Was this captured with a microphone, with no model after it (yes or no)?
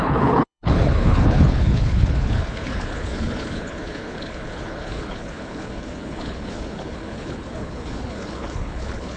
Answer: no